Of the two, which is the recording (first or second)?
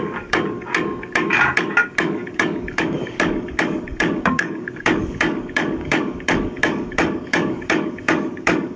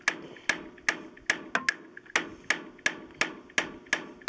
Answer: second